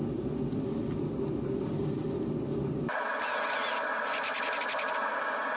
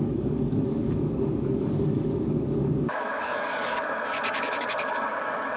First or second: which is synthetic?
second